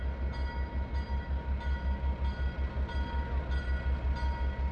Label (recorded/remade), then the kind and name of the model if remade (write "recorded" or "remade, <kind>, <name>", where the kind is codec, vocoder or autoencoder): recorded